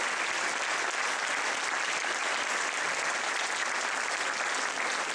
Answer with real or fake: real